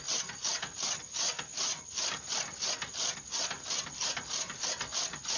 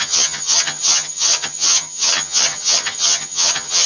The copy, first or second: second